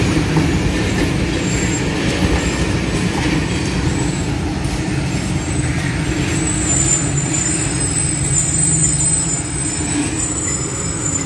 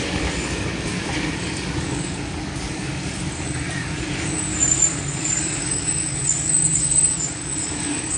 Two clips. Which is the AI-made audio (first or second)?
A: second